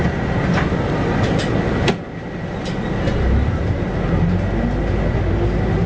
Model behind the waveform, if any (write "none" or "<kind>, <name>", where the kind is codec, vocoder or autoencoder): none